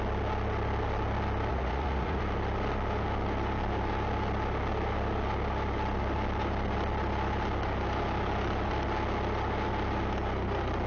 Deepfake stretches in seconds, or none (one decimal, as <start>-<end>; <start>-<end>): 1.5-2.2